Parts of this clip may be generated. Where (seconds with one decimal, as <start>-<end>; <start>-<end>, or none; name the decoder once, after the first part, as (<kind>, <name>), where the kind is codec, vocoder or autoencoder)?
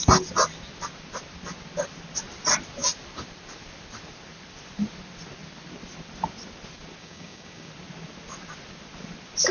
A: 7.0-7.7 (codec, DAC)